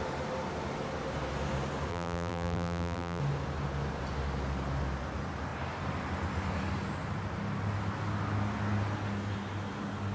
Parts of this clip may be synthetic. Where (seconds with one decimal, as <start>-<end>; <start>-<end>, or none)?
1.9-3.2